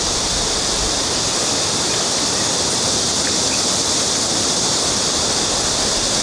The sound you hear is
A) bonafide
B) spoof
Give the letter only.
A